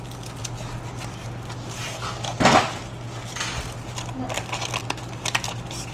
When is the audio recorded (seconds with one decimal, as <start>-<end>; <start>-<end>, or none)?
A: 0.0-5.9